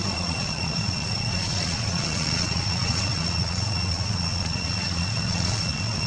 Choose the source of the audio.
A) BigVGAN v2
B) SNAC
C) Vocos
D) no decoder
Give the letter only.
C